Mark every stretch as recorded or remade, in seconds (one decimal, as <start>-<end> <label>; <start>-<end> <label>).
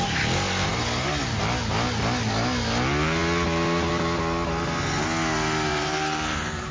0.0-0.7 recorded; 0.7-1.4 remade; 1.4-5.7 recorded; 5.7-6.7 remade